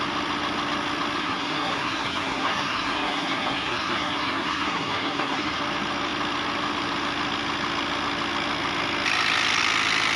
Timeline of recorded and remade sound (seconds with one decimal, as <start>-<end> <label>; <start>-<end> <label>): 0.0-1.2 recorded; 1.2-5.6 remade; 5.6-10.2 recorded